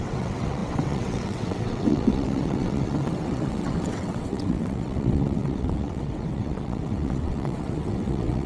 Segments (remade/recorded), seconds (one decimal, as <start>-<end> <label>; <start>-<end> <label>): 0.0-8.5 remade